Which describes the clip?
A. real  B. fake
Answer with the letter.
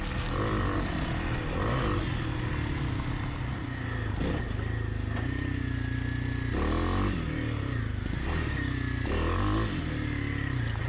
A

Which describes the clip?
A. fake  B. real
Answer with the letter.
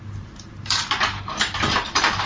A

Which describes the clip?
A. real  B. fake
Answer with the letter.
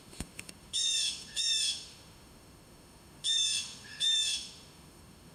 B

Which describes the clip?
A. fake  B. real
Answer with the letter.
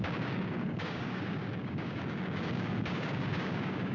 A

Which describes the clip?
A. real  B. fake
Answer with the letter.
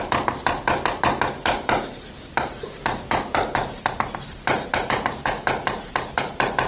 A